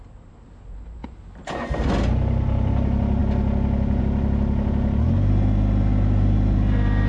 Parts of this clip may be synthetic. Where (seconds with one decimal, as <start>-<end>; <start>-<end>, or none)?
none